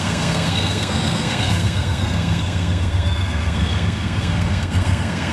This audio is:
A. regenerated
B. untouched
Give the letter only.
A